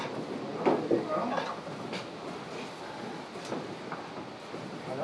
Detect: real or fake real